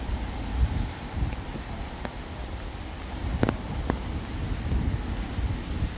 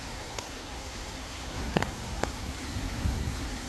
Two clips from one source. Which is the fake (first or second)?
second